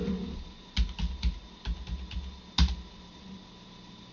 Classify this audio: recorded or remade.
recorded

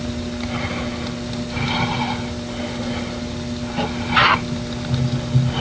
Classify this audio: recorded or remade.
recorded